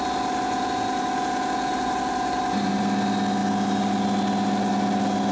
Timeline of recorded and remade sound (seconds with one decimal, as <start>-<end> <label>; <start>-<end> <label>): 0.0-1.7 recorded; 1.7-2.8 remade; 2.8-5.3 recorded